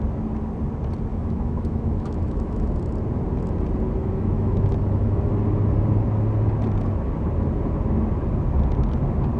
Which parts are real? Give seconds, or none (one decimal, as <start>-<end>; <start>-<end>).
0.0-1.1; 2.7-4.0; 5.3-9.4